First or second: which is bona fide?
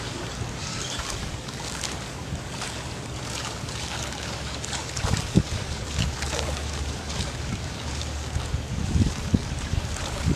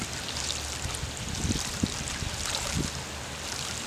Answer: second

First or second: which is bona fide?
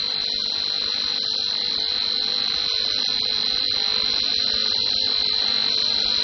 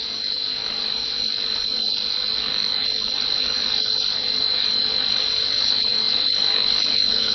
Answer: first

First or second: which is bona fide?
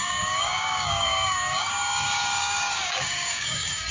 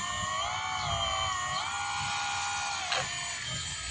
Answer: second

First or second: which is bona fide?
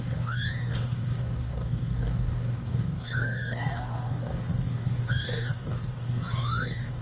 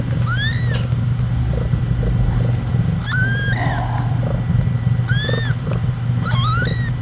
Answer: second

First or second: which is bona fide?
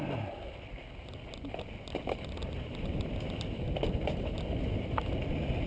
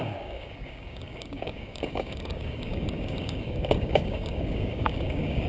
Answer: first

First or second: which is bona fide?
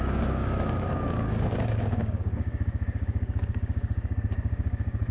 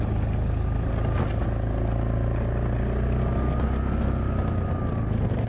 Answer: second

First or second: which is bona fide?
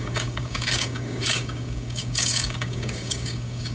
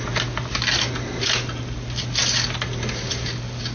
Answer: second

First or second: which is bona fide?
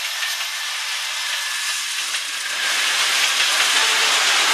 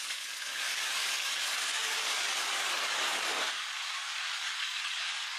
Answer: first